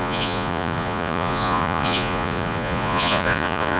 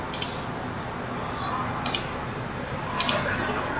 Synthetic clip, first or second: first